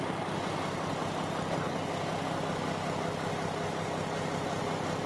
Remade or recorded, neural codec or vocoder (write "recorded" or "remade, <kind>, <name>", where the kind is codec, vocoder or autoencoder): recorded